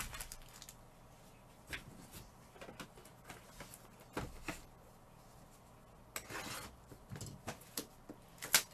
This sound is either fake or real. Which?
real